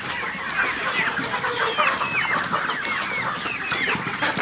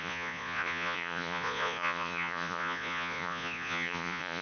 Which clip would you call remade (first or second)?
second